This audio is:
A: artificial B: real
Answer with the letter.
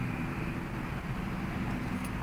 B